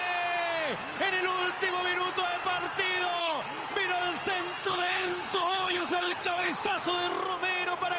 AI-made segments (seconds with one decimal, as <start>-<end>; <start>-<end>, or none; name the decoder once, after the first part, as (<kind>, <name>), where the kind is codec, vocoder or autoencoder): 3.2-3.7 (codec, HILCodec); 4.6-6.8